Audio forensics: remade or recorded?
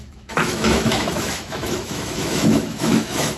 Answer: remade